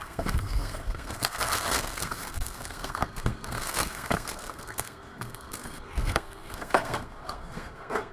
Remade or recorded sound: remade